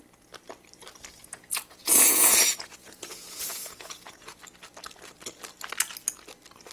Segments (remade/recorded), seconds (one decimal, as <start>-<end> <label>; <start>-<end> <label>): 0.0-1.2 recorded; 1.2-4.4 remade; 4.4-6.7 recorded